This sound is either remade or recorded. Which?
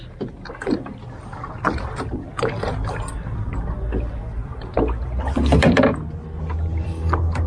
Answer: recorded